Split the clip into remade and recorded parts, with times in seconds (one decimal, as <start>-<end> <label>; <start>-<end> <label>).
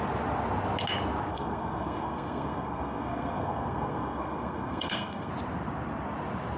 0.0-1.3 recorded; 1.3-5.3 remade; 5.3-6.6 recorded